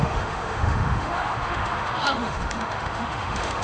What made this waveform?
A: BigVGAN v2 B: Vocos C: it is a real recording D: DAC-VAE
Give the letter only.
D